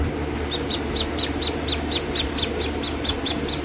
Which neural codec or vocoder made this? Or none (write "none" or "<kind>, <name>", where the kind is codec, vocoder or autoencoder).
none